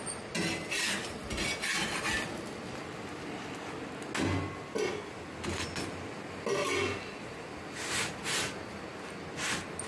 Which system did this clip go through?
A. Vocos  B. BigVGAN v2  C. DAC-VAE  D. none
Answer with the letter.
D